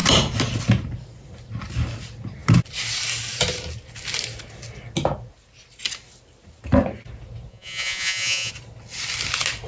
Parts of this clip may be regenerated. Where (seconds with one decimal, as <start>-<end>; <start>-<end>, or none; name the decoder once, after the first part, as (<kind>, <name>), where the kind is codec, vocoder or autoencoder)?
7.5-8.5 (vocoder, Vocos)